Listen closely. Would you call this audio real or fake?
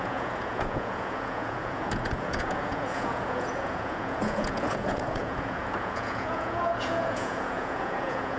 fake